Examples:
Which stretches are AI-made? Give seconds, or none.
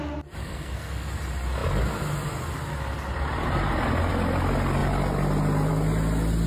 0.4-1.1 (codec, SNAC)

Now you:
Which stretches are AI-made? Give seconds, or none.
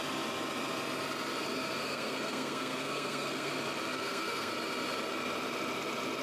1.8-3.5 (codec, SNAC); 3.9-4.5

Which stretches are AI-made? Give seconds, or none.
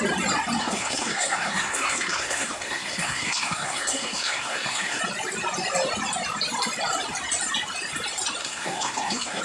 0.6-5.0 (codec, SNAC); 8.4-9.4